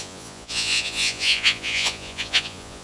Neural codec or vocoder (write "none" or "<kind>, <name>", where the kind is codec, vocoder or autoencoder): vocoder, Vocos